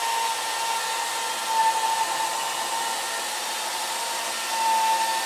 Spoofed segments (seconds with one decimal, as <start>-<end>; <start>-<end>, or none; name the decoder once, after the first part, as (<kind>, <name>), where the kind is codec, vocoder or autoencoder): none